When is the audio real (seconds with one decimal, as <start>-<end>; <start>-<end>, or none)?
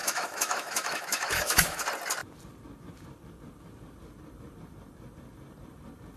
1.8-6.2